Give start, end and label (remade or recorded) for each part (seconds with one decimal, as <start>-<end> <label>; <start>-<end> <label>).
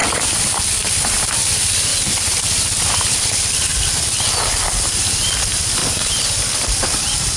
0.0-0.7 recorded; 0.7-1.9 remade; 1.9-2.4 recorded; 2.4-3.7 remade; 3.7-5.0 recorded; 5.0-5.8 remade; 5.8-6.4 recorded; 6.4-7.4 remade